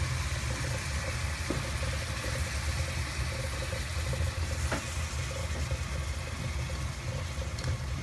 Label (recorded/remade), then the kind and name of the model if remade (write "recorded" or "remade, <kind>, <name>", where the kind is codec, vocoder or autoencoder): recorded